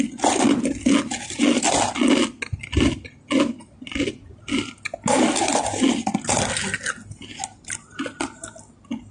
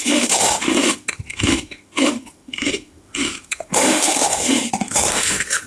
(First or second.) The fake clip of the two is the second